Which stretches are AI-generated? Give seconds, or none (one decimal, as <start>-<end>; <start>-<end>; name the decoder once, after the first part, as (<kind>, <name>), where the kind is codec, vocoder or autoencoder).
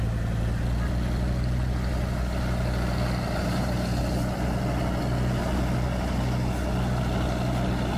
3.4-4.0 (vocoder, BigVGAN v2)